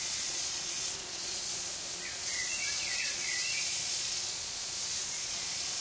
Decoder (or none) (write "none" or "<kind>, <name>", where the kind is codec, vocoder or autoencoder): vocoder, Vocos